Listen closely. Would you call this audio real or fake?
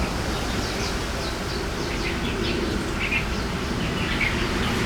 real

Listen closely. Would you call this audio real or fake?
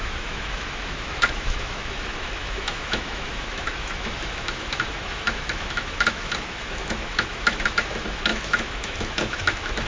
fake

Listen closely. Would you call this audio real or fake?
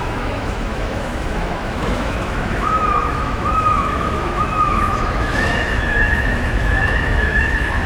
fake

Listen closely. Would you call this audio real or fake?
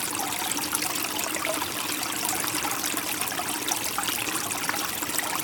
real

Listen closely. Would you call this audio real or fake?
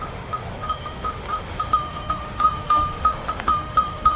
fake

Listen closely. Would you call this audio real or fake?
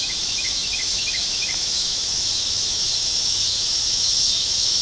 fake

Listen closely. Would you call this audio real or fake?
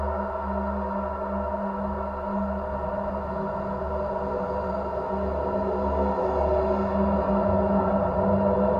real